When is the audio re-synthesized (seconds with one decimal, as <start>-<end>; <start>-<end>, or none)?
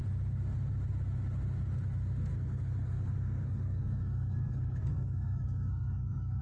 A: 2.3-6.4